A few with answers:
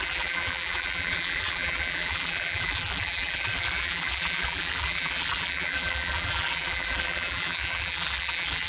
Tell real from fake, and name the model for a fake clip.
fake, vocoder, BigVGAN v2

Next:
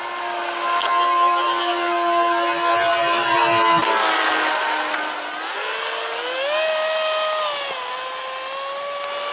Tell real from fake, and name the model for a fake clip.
real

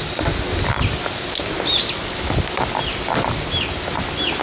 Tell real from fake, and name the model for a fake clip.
real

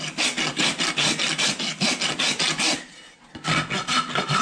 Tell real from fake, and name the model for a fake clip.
real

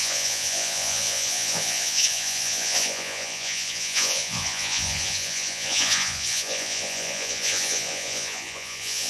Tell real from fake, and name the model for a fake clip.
fake, vocoder, Vocos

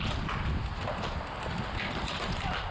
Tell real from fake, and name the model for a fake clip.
real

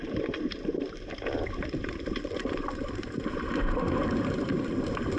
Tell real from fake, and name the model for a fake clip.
fake, vocoder, BigVGAN v2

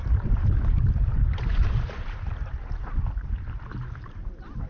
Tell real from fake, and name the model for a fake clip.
fake, vocoder, BigVGAN v2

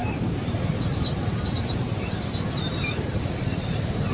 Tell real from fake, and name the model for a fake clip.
fake, vocoder, BigVGAN v2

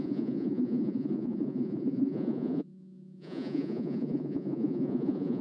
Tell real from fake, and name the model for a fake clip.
fake, vocoder, Vocos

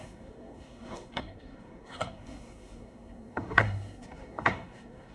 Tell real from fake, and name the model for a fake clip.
fake, codec, SNAC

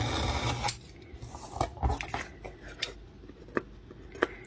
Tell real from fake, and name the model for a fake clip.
real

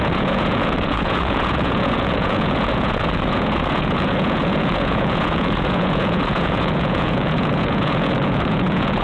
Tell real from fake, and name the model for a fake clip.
fake, vocoder, Vocos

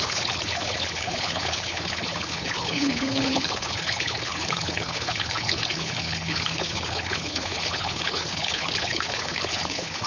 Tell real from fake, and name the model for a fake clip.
fake, codec, HILCodec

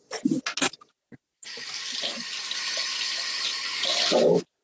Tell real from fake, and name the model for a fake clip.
real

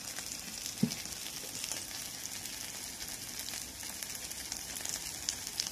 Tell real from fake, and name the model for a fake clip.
real